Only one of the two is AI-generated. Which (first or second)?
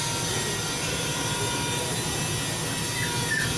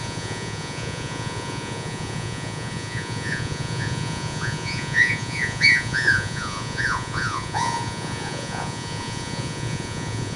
second